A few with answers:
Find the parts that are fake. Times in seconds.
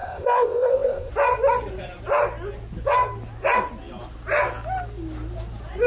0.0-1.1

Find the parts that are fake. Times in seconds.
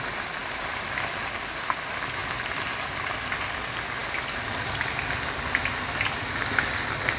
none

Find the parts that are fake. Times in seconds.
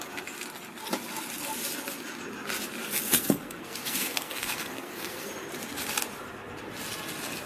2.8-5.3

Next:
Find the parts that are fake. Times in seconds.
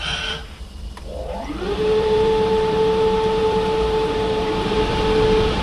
1.1-4.5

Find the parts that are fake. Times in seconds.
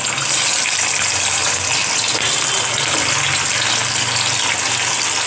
none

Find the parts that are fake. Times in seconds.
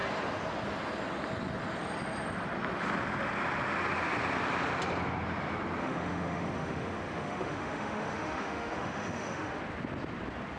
5.8-9.6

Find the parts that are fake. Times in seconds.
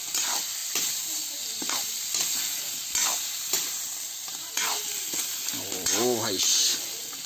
0.6-4.5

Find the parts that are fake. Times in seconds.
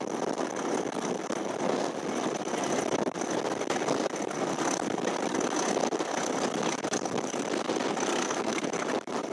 8.1-8.6